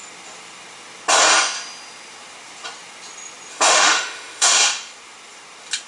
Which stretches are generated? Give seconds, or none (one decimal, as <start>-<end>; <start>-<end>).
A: 3.5-4.6